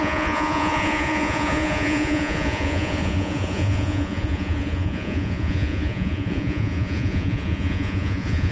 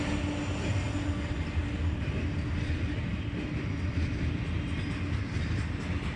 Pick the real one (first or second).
second